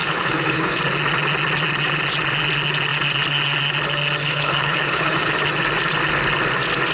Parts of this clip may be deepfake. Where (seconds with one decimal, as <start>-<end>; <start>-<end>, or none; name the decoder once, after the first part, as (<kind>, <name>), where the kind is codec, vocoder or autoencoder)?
0.0-0.8 (codec, HILCodec); 4.2-5.3